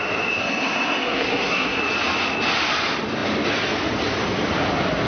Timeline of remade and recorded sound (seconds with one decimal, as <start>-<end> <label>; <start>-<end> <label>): 0.0-0.4 recorded; 0.4-1.8 remade; 1.8-5.1 recorded